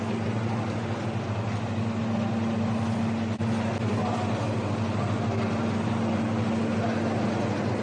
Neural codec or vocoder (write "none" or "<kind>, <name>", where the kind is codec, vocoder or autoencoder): none